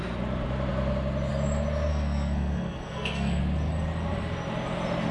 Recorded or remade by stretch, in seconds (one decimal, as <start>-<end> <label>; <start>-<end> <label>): 0.0-1.9 recorded; 1.9-3.4 remade; 3.4-5.1 recorded